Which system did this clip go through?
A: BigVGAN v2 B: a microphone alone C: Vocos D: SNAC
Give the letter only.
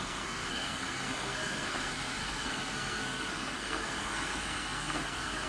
D